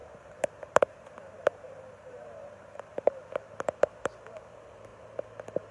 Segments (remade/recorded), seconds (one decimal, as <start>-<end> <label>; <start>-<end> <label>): 0.0-3.4 remade; 3.4-5.7 recorded